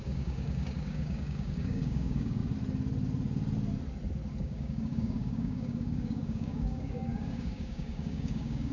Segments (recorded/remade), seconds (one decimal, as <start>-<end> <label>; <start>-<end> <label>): 0.0-2.4 remade; 2.4-4.4 recorded; 4.4-8.7 remade